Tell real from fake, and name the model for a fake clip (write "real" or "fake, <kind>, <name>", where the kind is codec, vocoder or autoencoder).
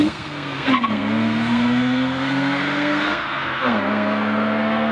fake, codec, SNAC